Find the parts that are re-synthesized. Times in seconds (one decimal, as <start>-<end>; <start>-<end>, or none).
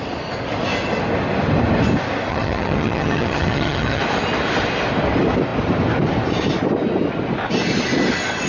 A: 2.3-4.0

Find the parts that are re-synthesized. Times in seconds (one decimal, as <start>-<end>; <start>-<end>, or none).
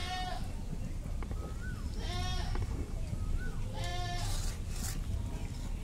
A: 2.3-3.4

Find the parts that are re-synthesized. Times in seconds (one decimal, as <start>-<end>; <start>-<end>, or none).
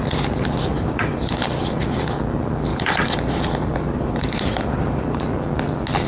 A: 0.7-1.8; 2.7-5.2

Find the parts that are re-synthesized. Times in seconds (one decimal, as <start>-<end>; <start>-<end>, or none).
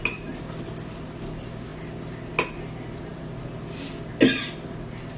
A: none